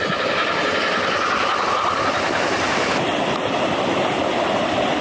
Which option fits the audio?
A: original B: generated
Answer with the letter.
A